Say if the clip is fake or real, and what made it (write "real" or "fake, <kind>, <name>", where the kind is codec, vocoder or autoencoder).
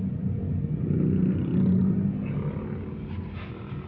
real